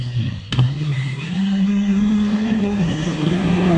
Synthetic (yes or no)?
yes